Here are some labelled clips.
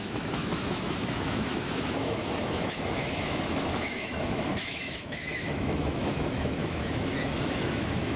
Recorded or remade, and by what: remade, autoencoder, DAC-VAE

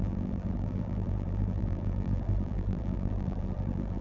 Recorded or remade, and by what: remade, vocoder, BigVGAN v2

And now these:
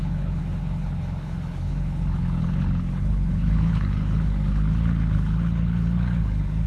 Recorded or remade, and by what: remade, codec, HILCodec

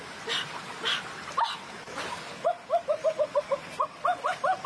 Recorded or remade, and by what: recorded